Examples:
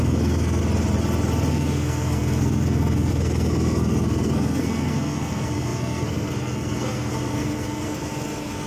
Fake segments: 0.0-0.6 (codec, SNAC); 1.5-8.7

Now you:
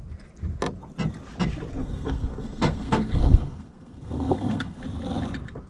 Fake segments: 1.8-4.8 (codec, SNAC)

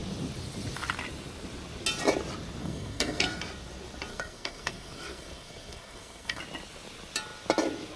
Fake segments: 2.6-3.4 (codec, SNAC); 4.1-6.4

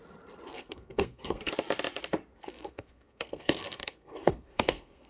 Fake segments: 0.5-1.5 (codec, SNAC); 2.4-5.1

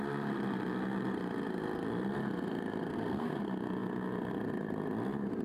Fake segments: 2.9-3.4 (codec, SNAC)

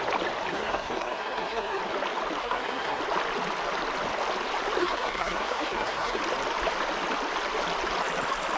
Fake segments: 0.5-1.8 (codec, SNAC); 2.4-3.0; 4.8-6.2

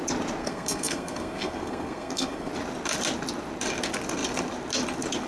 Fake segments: 0.4-2.5 (codec, SNAC)